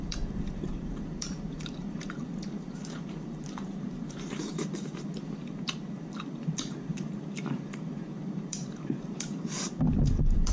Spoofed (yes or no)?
yes